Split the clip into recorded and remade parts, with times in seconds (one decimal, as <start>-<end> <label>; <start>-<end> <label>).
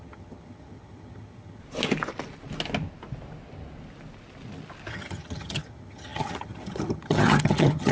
0.0-1.6 remade; 1.6-4.9 recorded; 4.9-7.9 remade